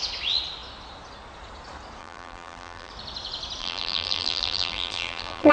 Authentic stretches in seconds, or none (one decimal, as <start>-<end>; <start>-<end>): 0.0-2.0; 2.9-3.6